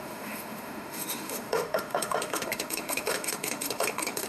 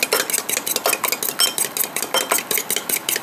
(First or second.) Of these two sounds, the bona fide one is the second